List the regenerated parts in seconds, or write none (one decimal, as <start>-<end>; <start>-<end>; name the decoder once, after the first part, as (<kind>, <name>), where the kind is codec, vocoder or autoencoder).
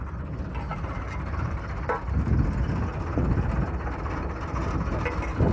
none